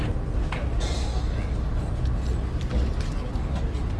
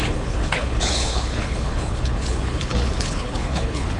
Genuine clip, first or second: first